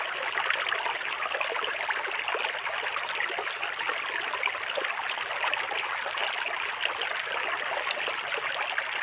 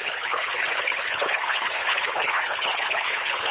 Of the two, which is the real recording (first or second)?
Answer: first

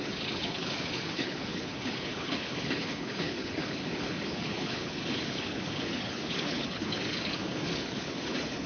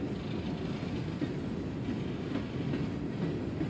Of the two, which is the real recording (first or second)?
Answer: second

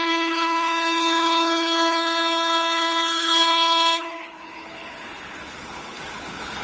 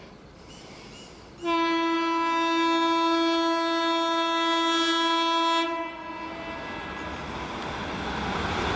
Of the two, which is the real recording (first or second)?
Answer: second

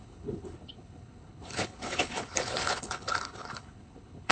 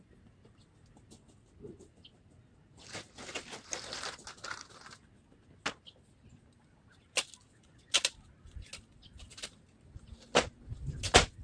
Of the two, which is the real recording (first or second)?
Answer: second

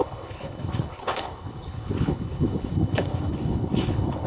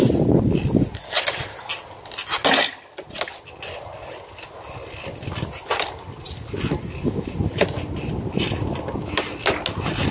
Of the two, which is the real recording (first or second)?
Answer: second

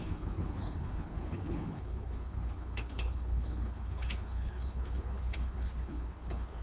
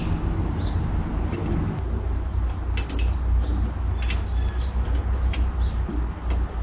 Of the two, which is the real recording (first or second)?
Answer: second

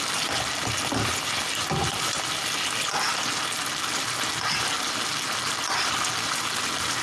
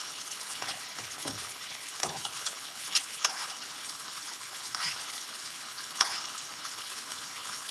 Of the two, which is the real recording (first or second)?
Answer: first